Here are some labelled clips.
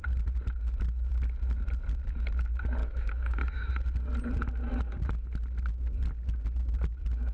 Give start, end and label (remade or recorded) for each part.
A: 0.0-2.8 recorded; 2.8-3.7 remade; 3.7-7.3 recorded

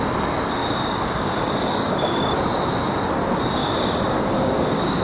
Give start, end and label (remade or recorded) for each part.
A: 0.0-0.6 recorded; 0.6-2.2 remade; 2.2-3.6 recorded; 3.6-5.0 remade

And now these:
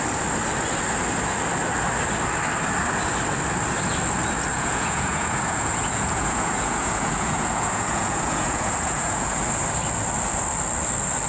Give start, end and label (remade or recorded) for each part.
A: 0.0-4.5 recorded; 4.5-9.4 remade; 9.4-11.3 recorded